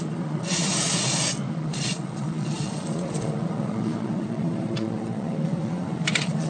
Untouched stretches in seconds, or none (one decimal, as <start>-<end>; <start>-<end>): 0.7-1.5